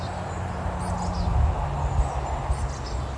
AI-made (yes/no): no